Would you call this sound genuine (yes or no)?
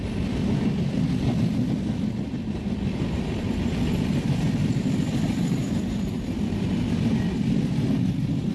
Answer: yes